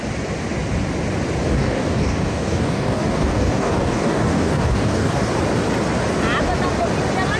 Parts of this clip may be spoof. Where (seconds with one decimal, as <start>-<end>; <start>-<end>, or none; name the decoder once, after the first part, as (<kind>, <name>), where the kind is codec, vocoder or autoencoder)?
1.5-5.3 (codec, DAC)